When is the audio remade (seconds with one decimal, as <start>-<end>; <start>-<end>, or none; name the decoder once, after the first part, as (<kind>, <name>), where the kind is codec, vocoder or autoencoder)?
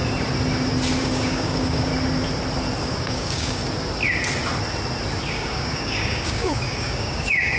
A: 1.0-1.9 (codec, DAC); 2.8-3.6; 5.3-7.6